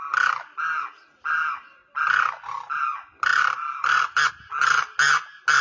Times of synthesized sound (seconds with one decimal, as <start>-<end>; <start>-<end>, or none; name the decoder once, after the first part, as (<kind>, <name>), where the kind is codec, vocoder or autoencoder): 3.3-4.3 (vocoder, BigVGAN v2)